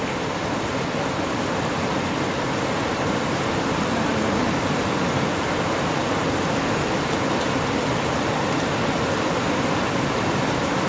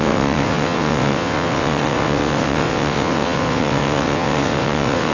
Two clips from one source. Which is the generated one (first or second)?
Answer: second